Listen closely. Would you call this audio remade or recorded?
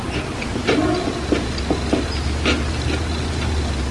recorded